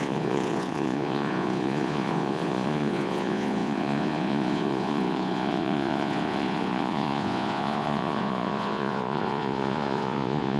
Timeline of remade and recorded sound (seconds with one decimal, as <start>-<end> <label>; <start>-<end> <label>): 0.0-10.6 remade